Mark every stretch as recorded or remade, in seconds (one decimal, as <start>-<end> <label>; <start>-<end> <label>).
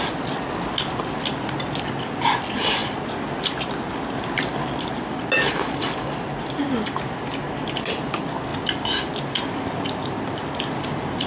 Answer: 0.0-11.3 recorded